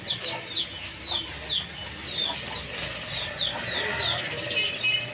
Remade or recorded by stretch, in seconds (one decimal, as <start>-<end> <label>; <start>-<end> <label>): 0.0-5.1 recorded